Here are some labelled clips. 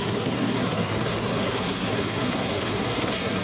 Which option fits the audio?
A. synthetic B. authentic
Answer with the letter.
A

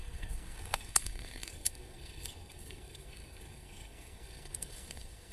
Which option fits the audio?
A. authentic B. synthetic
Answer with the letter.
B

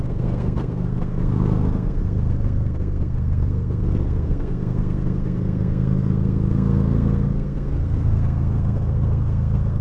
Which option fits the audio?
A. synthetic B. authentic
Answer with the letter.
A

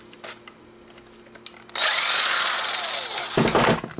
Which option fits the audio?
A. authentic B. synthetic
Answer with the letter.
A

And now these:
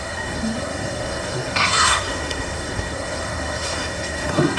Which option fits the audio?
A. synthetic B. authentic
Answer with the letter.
A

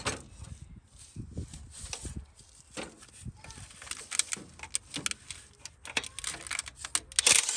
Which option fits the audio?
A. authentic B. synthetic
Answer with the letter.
A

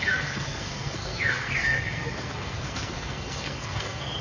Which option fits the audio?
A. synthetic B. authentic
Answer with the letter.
A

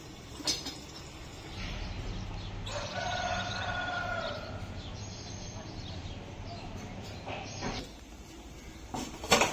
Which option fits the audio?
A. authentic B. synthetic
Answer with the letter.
A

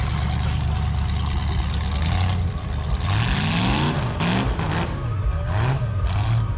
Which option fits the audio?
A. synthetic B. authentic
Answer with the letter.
B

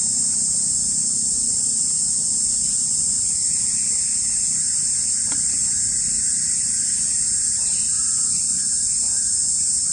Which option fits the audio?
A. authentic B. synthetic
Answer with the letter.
A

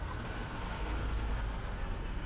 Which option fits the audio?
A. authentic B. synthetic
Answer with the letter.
B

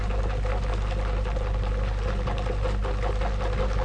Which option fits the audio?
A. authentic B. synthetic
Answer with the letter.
A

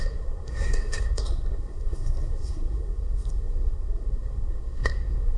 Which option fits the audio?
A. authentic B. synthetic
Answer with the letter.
B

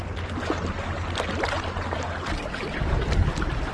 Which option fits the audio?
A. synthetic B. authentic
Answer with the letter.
B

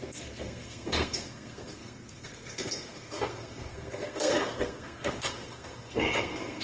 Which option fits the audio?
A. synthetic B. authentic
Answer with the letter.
A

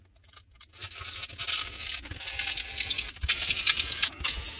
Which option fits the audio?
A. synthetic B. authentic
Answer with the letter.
B